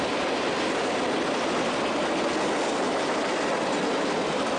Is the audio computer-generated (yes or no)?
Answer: no